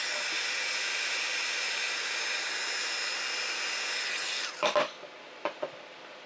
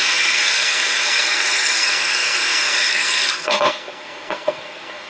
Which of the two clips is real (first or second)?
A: first